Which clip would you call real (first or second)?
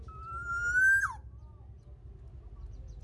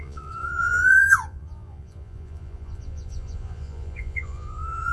first